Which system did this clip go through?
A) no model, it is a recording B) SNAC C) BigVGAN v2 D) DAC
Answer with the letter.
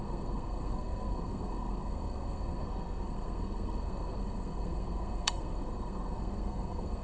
B